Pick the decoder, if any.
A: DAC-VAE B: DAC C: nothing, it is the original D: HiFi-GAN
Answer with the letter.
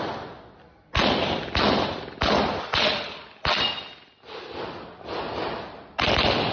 C